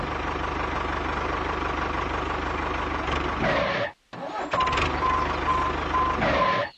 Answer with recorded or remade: recorded